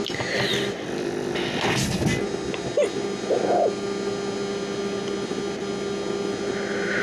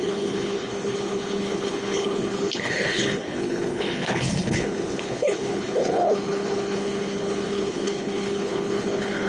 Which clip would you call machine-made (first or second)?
second